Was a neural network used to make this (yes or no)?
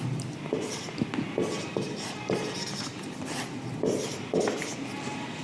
no